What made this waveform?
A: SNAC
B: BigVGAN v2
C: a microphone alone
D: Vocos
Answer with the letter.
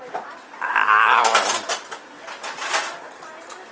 C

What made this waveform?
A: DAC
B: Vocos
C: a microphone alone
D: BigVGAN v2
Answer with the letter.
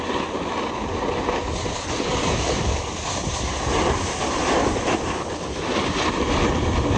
C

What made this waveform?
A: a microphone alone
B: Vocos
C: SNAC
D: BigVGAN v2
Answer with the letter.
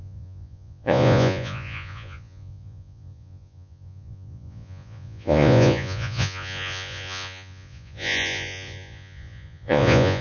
B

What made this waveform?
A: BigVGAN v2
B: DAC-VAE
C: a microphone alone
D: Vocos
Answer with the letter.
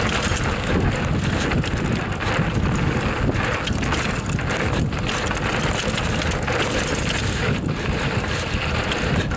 C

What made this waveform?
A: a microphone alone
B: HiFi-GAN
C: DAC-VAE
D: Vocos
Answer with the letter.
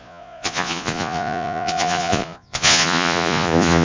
D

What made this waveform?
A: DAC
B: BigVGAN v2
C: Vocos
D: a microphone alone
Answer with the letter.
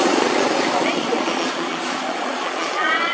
C